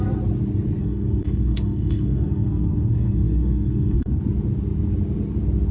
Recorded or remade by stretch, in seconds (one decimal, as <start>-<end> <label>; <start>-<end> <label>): 0.0-0.8 recorded; 0.8-4.2 remade; 4.2-5.7 recorded